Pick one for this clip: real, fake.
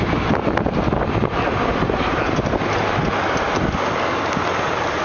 real